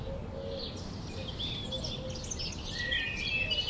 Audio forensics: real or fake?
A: real